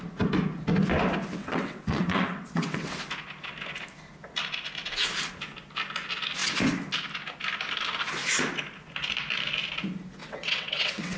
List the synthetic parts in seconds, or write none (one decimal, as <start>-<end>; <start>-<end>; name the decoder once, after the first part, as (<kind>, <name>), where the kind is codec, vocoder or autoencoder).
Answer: 1.4-3.0 (vocoder, WaveNeXt); 10.2-11.2